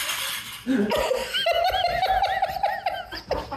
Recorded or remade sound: recorded